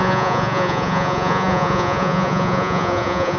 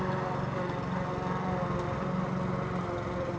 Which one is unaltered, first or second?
second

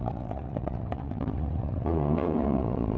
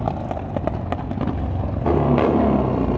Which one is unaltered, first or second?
second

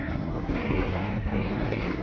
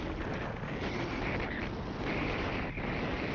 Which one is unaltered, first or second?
second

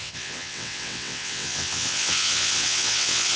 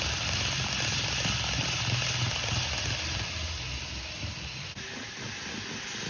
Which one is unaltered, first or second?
second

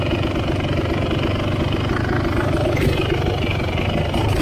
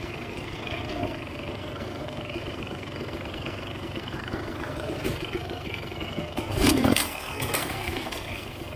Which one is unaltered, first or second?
first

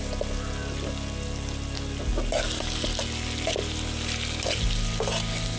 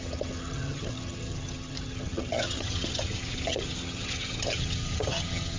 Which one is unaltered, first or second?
first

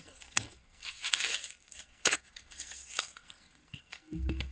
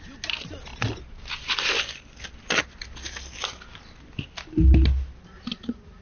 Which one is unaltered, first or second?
second